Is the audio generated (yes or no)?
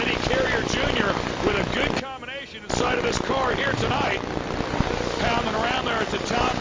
no